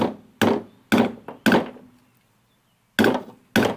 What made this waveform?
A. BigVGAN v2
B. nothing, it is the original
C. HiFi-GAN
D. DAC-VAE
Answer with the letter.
B